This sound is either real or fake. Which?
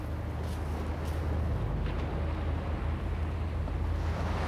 real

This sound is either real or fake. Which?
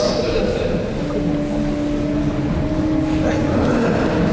real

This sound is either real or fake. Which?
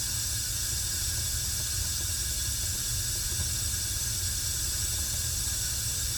real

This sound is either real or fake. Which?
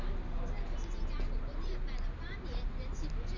real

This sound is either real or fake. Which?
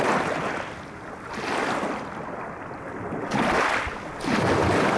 real